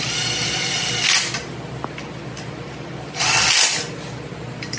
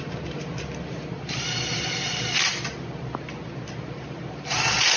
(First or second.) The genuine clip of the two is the first